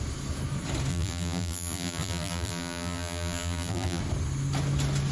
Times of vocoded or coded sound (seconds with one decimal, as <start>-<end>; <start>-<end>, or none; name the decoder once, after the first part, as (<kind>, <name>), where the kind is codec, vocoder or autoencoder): 0.9-4.0 (vocoder, BigVGAN v2)